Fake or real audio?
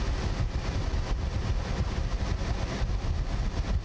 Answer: real